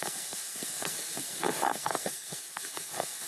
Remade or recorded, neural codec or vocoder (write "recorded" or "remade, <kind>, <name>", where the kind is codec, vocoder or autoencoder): remade, codec, SNAC